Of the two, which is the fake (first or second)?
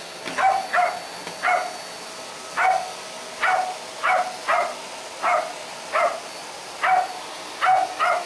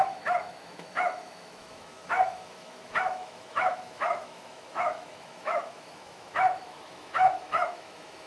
second